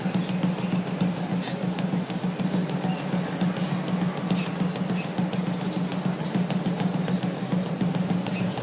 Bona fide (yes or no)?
yes